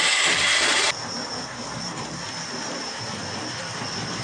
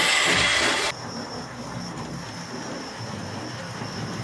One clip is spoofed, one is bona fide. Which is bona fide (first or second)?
second